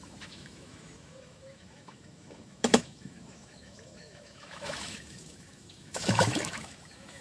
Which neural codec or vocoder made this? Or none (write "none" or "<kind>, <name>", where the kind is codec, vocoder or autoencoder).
autoencoder, DAC-VAE